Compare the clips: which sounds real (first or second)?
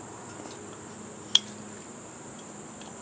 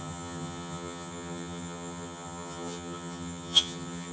first